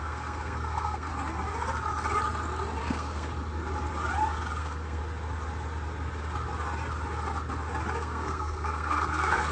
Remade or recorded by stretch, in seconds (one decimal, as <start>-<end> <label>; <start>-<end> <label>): 0.0-1.1 remade; 1.1-2.8 recorded; 2.8-3.3 remade; 3.3-4.6 recorded; 4.6-5.0 remade; 5.0-7.9 recorded; 7.9-9.5 remade